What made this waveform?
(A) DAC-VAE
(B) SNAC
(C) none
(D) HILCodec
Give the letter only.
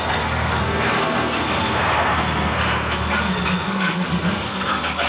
B